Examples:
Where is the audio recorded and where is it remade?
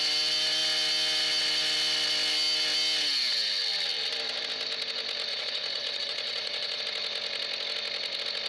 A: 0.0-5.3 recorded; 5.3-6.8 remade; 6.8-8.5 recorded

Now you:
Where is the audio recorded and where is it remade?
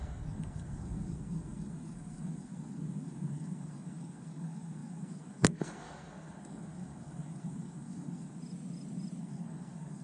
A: 0.0-8.4 remade; 8.4-9.2 recorded; 9.2-10.0 remade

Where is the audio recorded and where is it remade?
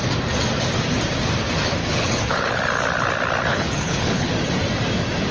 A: 0.0-1.8 recorded; 1.8-2.6 remade; 2.6-3.5 recorded; 3.5-4.3 remade; 4.3-5.3 recorded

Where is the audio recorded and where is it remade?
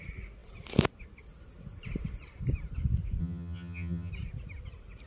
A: 0.0-3.2 recorded; 3.2-4.1 remade; 4.1-5.1 recorded